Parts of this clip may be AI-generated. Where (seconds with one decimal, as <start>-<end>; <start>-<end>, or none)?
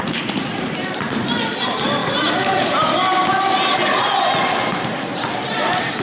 2.0-3.4